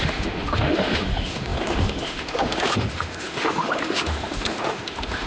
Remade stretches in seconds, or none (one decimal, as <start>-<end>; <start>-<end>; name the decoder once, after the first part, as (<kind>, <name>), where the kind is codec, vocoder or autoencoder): 0.0-5.3 (autoencoder, DAC-VAE)